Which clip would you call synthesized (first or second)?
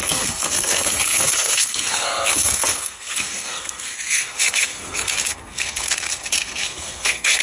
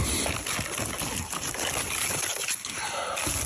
first